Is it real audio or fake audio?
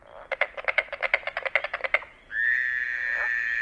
real